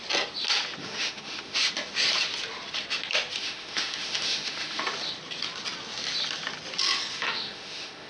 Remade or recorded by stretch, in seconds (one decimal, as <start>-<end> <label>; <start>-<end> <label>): 0.0-0.8 recorded; 0.8-1.7 remade; 1.7-3.4 recorded; 3.4-4.8 remade; 4.8-7.1 recorded; 7.1-8.1 remade